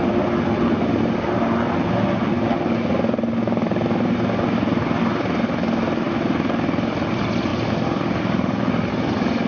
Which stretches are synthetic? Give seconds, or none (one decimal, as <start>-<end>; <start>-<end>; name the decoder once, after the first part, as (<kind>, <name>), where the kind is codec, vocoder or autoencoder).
none